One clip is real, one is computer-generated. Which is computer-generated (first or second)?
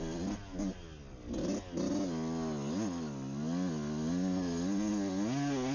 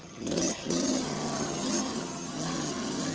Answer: second